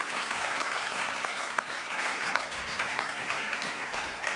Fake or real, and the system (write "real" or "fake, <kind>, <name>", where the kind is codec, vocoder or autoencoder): fake, codec, SNAC